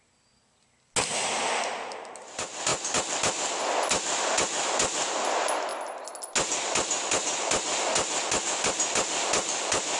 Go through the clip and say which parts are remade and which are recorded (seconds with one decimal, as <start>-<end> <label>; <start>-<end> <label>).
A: 0.0-10.0 recorded